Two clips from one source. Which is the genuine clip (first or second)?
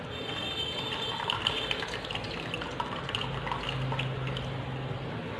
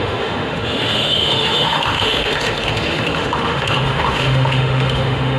first